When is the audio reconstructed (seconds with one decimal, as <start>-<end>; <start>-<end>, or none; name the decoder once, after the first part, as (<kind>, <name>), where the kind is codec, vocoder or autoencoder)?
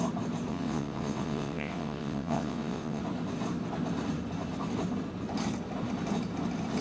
0.5-3.0 (vocoder, WaveNeXt)